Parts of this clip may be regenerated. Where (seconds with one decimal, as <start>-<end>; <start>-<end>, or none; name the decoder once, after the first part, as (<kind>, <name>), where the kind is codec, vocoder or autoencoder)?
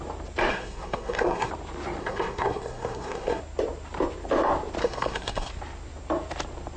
0.5-1.5 (codec, SNAC); 2.0-3.4; 4.8-5.5